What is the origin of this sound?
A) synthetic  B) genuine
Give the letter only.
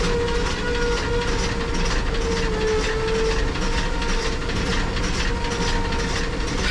B